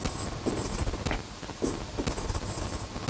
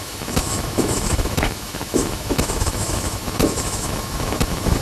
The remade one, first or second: second